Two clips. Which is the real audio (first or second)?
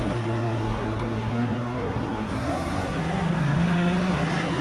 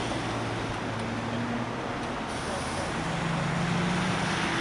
second